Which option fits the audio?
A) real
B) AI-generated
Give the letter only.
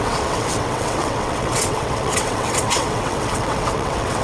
B